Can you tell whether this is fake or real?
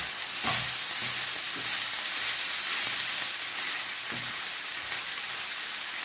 real